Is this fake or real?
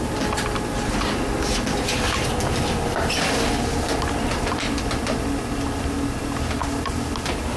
real